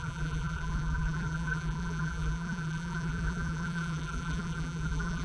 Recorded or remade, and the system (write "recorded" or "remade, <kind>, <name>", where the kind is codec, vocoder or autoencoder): remade, vocoder, BigVGAN v2